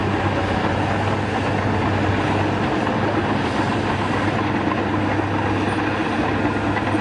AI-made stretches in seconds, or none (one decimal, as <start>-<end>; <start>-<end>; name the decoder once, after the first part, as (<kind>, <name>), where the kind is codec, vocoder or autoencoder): none